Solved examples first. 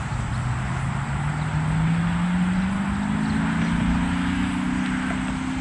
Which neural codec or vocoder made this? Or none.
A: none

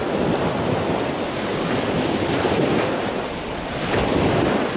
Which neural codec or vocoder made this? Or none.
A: none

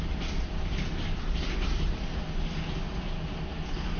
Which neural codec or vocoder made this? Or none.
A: none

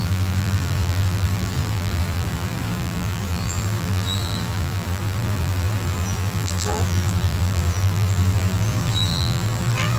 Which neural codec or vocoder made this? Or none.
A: vocoder, BigVGAN v2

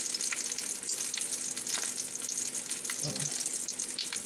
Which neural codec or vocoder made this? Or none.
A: none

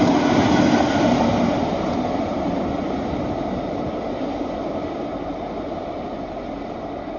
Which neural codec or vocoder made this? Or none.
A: vocoder, BigVGAN v2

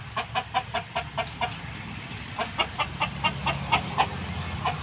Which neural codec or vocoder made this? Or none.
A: none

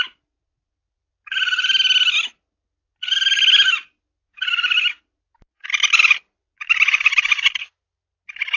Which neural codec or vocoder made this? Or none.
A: none